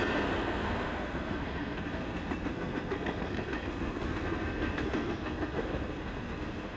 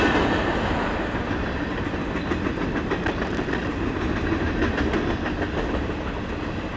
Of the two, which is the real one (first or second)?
second